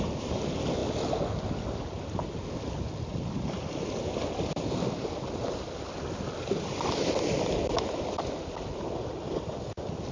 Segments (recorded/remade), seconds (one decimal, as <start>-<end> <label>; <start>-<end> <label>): 0.0-10.1 recorded